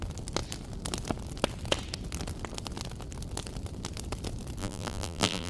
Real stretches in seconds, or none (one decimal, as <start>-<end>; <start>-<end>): 0.0-4.6